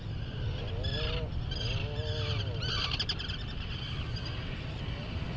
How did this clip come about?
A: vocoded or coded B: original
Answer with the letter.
B